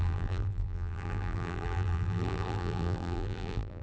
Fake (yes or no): yes